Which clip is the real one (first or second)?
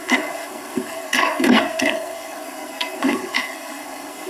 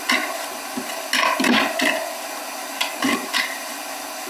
second